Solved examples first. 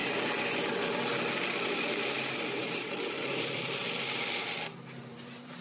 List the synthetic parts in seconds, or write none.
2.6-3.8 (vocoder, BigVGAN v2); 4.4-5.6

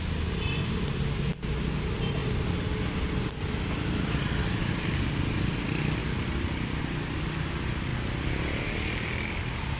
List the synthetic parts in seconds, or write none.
6.0-6.8 (vocoder, BigVGAN v2)

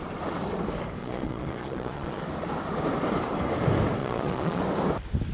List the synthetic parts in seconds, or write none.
1.0-2.2 (vocoder, Vocos); 4.0-4.6

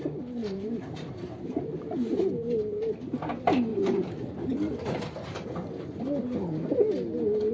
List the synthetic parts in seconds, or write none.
0.4-2.2 (vocoder, BigVGAN v2); 3.7-5.7

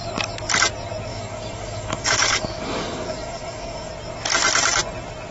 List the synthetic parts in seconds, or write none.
1.1-3.9 (codec, DAC)

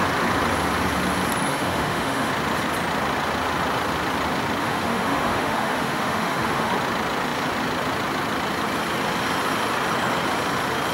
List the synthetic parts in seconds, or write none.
1.5-2.3 (autoencoder, DAC-VAE); 4.6-6.7